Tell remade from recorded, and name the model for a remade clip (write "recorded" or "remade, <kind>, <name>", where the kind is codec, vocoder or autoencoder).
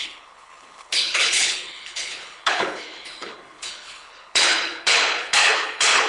remade, codec, HILCodec